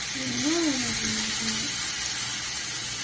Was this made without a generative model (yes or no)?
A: yes